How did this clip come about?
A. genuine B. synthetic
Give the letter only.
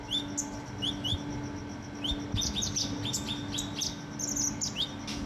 A